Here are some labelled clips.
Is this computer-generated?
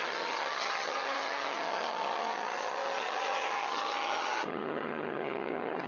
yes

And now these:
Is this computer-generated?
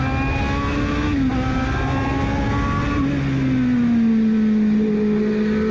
no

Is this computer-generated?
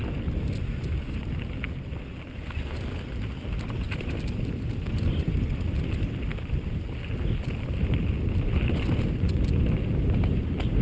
no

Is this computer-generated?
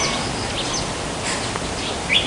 no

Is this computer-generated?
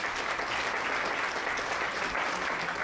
no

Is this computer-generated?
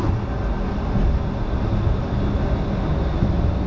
no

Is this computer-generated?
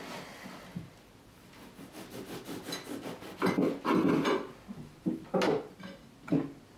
no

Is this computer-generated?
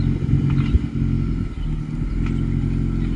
no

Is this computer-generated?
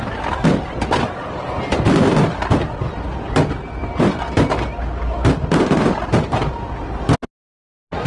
no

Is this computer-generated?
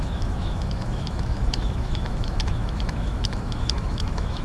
yes